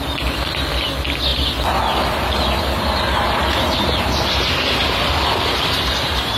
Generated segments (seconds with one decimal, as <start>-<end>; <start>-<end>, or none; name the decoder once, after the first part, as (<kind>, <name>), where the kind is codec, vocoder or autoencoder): none